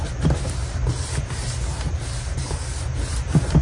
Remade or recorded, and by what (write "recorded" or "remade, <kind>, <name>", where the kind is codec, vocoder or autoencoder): recorded